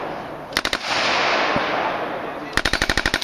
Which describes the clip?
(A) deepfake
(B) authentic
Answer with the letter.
B